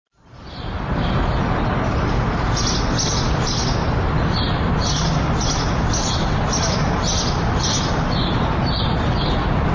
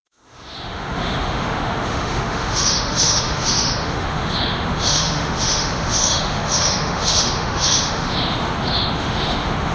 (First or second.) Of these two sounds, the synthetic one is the second